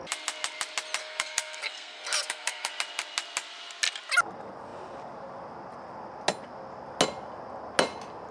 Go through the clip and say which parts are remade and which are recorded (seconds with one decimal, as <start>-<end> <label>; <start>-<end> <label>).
0.0-1.0 recorded; 1.0-2.7 remade; 2.7-8.3 recorded